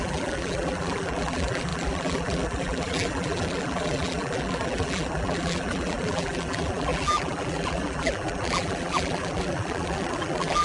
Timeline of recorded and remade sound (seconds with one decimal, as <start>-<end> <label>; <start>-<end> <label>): 0.0-10.6 remade